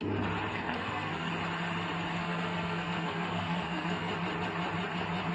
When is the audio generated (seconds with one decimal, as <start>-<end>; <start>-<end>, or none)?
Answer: 0.5-1.3; 2.2-4.1